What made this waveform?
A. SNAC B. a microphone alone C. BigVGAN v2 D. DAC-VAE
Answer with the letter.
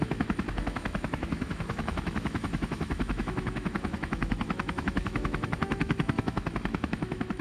D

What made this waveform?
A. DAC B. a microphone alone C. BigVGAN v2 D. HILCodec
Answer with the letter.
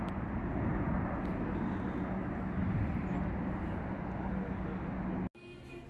B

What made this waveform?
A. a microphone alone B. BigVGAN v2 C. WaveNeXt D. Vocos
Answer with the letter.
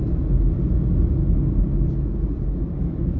A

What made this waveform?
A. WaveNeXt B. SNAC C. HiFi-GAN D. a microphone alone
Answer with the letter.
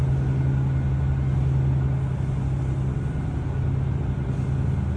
D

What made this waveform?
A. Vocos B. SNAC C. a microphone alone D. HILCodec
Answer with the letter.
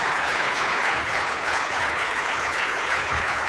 D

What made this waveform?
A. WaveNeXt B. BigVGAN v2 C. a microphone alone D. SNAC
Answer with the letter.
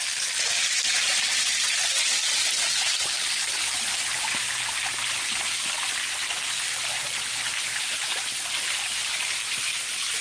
C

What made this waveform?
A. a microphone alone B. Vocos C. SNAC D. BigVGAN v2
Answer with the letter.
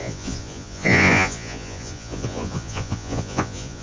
B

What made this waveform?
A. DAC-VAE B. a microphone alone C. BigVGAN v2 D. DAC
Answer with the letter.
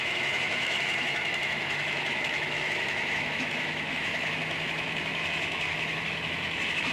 A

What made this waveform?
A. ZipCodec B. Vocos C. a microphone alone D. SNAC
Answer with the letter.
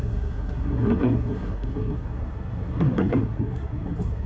D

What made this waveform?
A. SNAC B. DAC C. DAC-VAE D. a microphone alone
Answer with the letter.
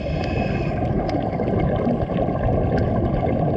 D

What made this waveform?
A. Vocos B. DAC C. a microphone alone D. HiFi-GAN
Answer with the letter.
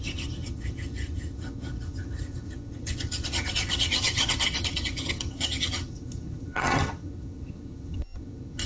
D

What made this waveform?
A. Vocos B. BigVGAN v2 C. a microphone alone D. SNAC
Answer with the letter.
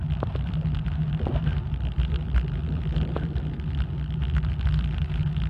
C